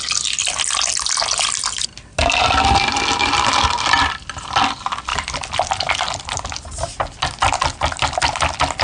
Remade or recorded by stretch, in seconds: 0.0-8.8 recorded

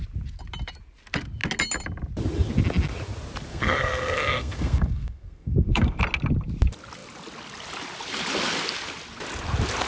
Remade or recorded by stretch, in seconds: 0.0-3.5 recorded; 3.5-6.0 remade; 6.0-9.9 recorded

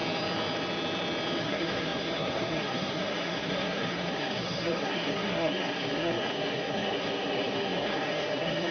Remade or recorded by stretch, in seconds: 0.0-1.4 recorded; 1.4-8.7 remade

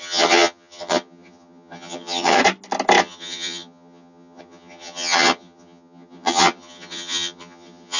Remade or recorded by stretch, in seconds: 0.0-2.4 remade; 2.4-3.0 recorded; 3.0-8.0 remade

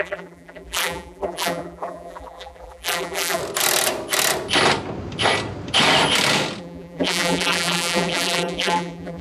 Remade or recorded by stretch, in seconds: 0.0-3.4 remade; 3.4-6.6 recorded; 6.6-9.2 remade

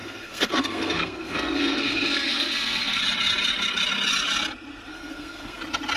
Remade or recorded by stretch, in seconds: 0.0-3.0 remade; 3.0-4.9 recorded; 4.9-5.6 remade; 5.6-6.0 recorded

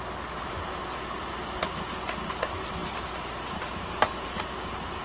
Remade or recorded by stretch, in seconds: 0.0-5.0 recorded